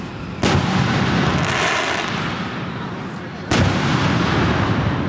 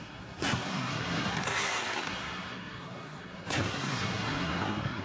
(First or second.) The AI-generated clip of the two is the second